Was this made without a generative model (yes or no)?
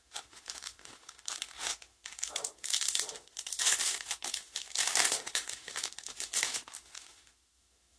no